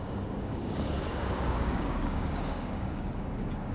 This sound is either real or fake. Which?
fake